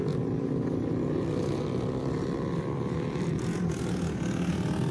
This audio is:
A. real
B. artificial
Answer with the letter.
A